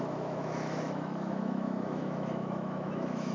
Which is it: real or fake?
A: fake